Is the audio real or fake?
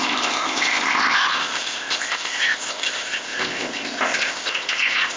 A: fake